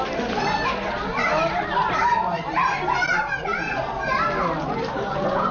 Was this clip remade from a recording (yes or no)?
no